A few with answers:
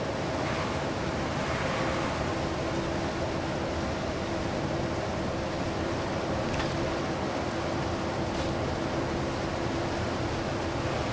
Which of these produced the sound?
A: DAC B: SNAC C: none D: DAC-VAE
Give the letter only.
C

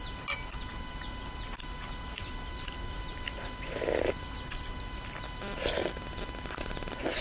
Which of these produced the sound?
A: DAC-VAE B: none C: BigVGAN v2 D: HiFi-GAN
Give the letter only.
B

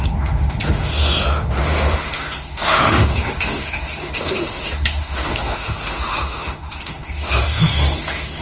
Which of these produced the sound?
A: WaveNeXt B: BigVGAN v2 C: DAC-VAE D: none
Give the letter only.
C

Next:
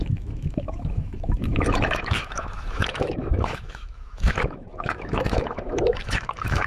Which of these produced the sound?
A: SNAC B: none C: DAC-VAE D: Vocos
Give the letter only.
C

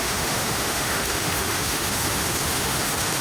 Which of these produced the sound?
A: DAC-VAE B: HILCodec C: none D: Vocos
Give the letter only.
A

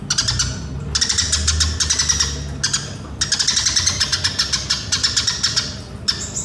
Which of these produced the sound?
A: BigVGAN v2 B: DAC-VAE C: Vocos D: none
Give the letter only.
D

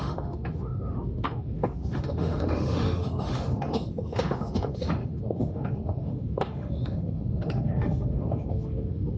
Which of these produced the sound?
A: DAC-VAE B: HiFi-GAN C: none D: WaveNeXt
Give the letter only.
A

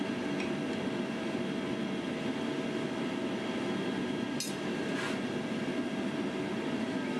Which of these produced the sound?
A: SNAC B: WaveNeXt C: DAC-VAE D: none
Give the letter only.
D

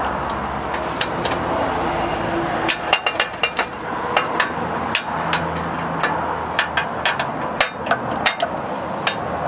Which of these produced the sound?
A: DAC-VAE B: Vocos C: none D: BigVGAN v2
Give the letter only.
C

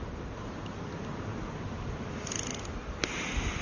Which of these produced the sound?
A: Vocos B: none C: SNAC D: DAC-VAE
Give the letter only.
B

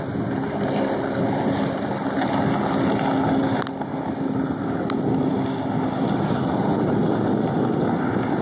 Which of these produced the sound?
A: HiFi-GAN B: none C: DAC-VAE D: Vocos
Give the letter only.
B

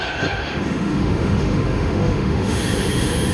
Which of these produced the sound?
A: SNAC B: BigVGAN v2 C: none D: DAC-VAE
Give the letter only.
D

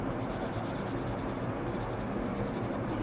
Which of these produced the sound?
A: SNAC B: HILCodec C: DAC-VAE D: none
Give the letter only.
D